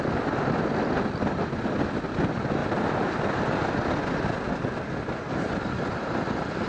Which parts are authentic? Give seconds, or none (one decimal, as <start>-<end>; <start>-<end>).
0.0-2.6; 3.2-6.7